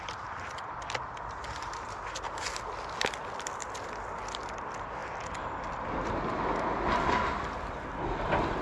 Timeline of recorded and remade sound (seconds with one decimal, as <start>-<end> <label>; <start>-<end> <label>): 0.0-8.6 recorded